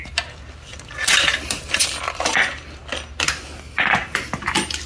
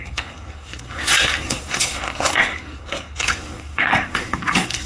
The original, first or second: first